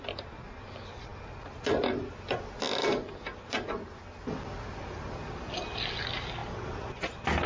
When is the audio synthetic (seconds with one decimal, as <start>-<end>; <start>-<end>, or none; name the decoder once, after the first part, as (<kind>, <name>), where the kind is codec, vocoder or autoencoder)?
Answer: 6.4-7.5 (vocoder, BigVGAN v2)